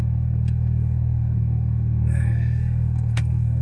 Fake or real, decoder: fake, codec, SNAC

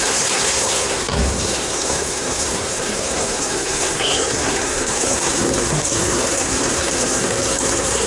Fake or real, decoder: fake, codec, SNAC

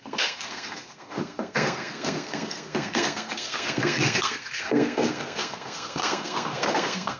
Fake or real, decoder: fake, codec, SNAC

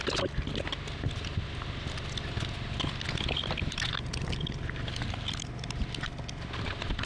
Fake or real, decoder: real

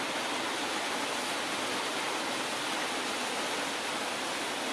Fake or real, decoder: real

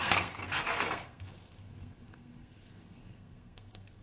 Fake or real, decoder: fake, codec, SNAC